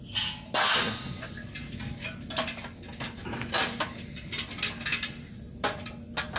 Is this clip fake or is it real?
real